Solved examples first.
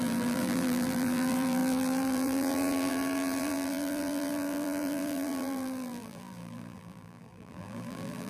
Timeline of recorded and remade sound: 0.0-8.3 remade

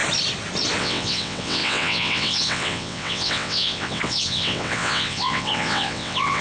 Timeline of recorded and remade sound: 0.0-0.8 recorded; 0.8-6.4 remade

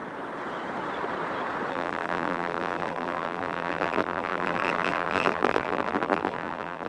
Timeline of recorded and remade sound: 0.0-1.7 recorded; 1.7-6.9 remade